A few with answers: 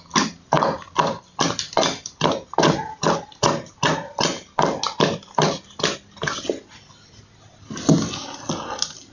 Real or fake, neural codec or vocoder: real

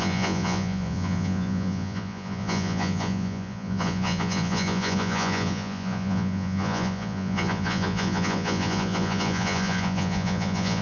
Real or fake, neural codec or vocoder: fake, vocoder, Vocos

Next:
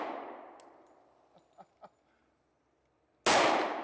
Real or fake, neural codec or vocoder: real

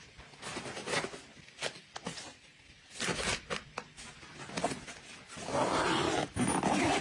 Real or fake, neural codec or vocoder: real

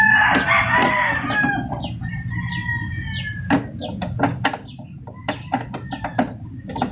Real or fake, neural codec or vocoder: real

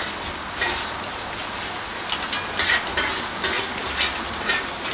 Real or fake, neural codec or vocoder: real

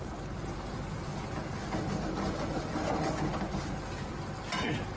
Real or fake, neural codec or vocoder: real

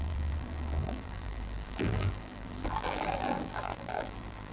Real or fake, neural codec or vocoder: fake, vocoder, BigVGAN v2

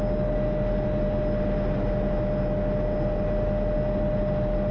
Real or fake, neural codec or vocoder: real